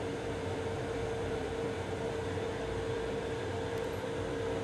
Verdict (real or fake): fake